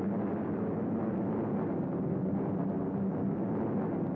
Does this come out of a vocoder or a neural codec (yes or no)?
no